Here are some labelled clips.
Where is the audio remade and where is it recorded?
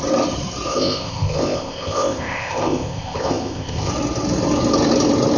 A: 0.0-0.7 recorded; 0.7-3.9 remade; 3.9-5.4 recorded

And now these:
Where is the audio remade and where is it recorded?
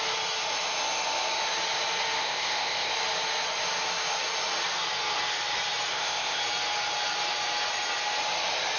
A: 0.0-2.2 recorded; 2.2-2.9 remade; 2.9-5.9 recorded; 5.9-6.4 remade; 6.4-8.8 recorded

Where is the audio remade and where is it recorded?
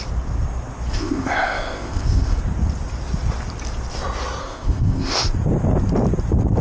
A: 0.0-0.9 recorded; 0.9-2.4 remade; 2.4-4.4 recorded; 4.4-5.2 remade; 5.2-6.6 recorded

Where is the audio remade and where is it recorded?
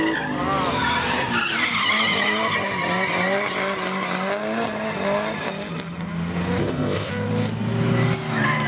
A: 0.0-6.6 recorded; 6.6-7.1 remade; 7.1-8.7 recorded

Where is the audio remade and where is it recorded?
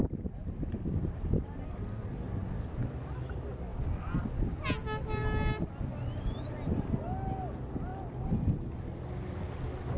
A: 0.0-10.0 recorded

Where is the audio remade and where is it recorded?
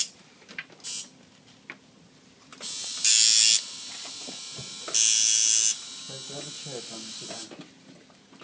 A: 0.0-8.4 recorded